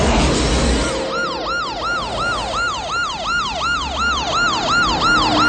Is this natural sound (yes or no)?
yes